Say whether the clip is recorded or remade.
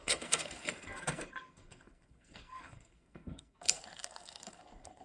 remade